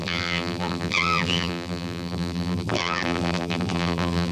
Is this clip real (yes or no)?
no